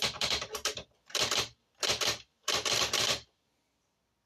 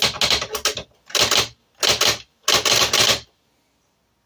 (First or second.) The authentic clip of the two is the second